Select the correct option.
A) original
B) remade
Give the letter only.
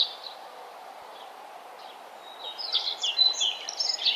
A